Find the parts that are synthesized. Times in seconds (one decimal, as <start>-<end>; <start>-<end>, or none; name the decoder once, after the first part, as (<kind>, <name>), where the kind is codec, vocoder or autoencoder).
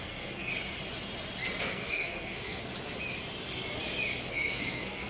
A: 0.0-0.5 (codec, SNAC); 1.6-2.7; 4.3-5.1